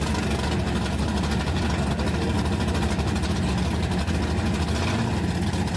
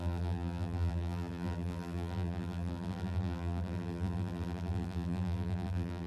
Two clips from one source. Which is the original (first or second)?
first